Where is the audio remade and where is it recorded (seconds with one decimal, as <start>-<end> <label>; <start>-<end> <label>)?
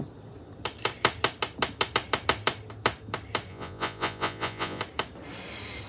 0.0-3.5 recorded; 3.5-4.8 remade; 4.8-5.9 recorded